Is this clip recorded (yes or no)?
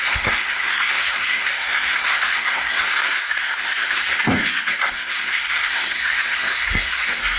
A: no